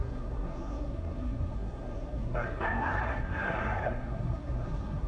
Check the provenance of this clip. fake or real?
fake